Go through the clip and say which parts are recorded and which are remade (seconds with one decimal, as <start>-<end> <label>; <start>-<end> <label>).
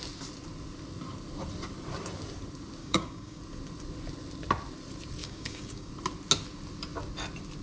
0.0-2.8 recorded; 2.8-3.4 remade; 3.4-5.2 recorded; 5.2-5.9 remade; 5.9-7.6 recorded